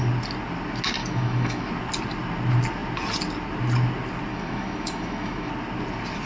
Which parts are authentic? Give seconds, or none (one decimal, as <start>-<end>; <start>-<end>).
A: 0.0-1.0; 1.7-4.3; 5.5-6.3